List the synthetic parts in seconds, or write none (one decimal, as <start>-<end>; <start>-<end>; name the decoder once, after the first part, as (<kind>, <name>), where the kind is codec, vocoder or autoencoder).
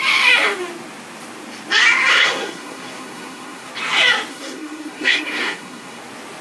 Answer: 2.1-3.7 (codec, SNAC); 4.3-6.0